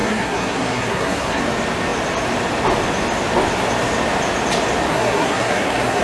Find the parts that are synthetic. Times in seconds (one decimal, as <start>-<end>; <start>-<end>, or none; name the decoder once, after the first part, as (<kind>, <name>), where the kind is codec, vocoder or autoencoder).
0.0-1.4 (codec, SNAC); 4.9-6.0

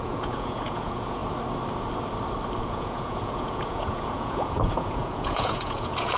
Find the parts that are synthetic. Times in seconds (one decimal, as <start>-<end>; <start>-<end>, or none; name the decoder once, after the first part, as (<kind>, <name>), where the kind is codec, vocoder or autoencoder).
0.0-1.2 (vocoder, Vocos); 2.6-6.2